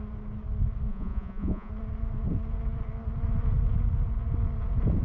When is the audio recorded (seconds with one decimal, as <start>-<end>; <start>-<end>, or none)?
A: 0.0-0.9; 1.7-5.0